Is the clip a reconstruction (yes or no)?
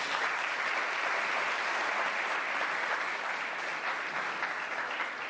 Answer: no